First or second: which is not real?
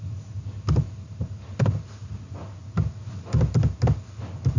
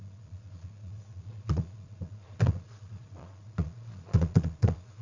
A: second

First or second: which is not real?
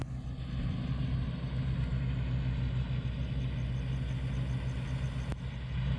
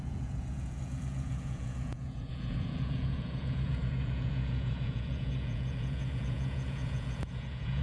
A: second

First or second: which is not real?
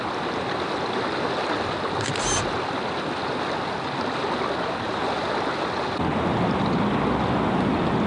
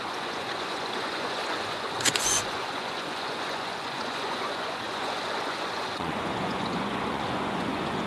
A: second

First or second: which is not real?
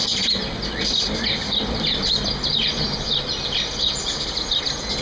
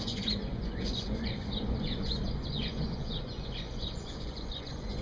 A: second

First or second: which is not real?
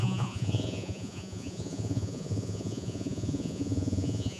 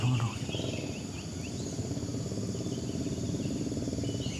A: first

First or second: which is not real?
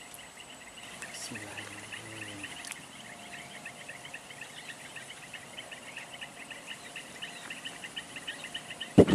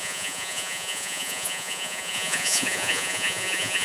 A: second